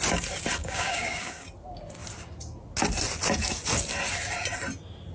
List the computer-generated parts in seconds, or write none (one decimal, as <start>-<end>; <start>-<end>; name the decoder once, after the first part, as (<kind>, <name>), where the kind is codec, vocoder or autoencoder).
0.6-1.5 (codec, DAC)

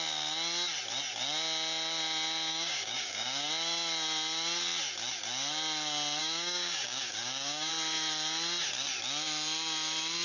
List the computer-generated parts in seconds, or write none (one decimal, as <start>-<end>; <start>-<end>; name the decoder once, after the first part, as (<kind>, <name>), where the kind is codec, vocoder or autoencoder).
2.5-3.5 (codec, DAC); 6.2-7.7